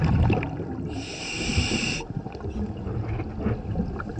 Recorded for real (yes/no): yes